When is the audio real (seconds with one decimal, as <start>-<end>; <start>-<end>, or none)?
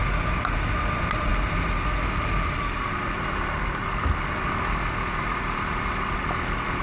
0.0-6.8